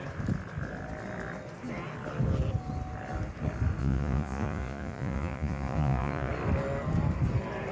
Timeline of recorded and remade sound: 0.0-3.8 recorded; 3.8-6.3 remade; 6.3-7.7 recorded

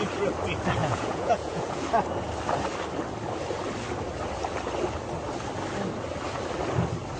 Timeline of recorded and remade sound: 0.0-0.8 recorded; 0.8-1.8 remade; 1.8-7.2 recorded